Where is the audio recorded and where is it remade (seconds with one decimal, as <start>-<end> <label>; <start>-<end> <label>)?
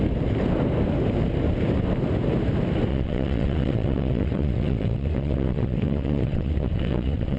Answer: 0.0-2.9 recorded; 2.9-7.4 remade